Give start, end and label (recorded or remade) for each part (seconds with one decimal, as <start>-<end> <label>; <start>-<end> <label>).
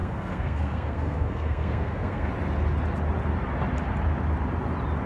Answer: 0.0-2.3 remade; 2.3-5.1 recorded